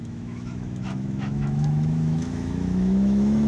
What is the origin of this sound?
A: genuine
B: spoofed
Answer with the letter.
B